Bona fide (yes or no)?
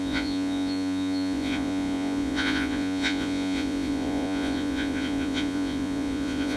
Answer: no